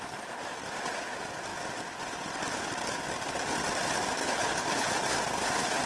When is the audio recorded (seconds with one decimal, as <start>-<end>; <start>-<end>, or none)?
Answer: 0.0-4.2; 4.9-5.9